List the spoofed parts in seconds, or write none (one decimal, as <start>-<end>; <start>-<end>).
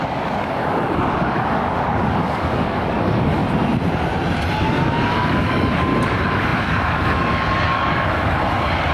0.0-3.4; 4.6-8.9